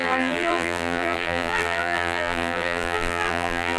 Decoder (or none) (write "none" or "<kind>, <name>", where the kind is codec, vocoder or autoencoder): vocoder, BigVGAN v2